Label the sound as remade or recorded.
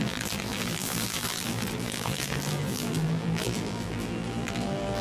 remade